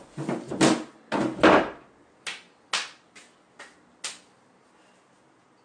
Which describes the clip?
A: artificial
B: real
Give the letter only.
B